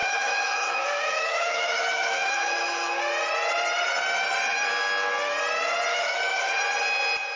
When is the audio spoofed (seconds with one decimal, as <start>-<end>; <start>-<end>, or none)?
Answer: 0.0-3.0; 5.9-6.5